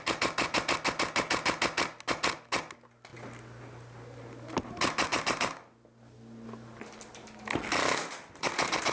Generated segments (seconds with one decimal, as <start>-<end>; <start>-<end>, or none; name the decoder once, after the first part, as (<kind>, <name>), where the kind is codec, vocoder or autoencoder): none